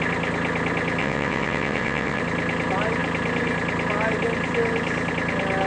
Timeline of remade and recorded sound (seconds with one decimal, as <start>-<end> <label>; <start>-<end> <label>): 0.0-1.0 recorded; 1.0-2.2 remade; 2.2-5.7 recorded